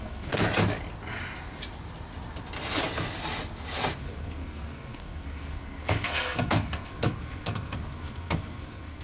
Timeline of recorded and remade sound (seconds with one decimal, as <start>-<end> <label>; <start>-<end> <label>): 0.0-0.4 remade; 0.4-4.0 recorded; 4.0-9.0 remade